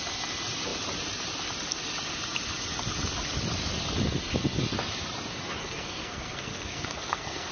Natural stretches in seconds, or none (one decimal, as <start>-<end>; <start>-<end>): 0.0-5.6